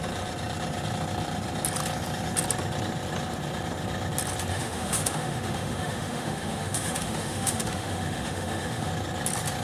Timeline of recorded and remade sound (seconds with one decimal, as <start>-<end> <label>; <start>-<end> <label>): 0.0-4.5 recorded; 4.5-8.9 remade; 8.9-9.6 recorded